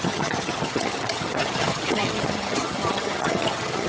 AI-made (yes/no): yes